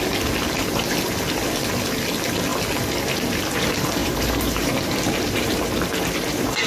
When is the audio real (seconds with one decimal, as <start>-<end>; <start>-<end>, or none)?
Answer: 0.0-4.0